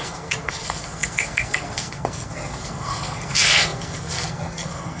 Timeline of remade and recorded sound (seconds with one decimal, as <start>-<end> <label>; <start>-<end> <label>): 0.0-5.0 remade